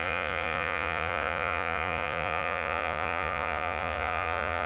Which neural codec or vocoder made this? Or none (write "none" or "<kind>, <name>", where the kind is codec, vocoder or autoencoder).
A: vocoder, Vocos